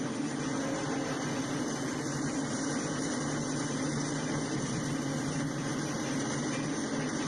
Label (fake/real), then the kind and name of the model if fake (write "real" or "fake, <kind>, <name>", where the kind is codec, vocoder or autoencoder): real